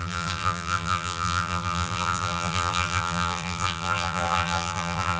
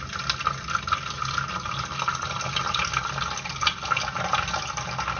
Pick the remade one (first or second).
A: first